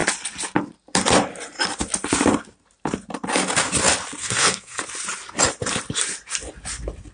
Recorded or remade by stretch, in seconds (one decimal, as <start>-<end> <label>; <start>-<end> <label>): 0.0-4.2 recorded; 4.2-4.8 remade; 4.8-7.1 recorded